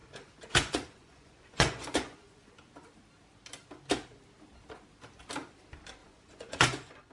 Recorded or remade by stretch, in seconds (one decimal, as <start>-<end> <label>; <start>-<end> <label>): 0.0-2.5 remade; 2.5-6.0 recorded; 6.0-7.1 remade